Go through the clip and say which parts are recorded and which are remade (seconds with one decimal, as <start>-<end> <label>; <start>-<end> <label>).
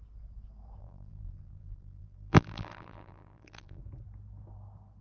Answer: 0.0-0.8 recorded; 0.8-3.8 remade; 3.8-5.0 recorded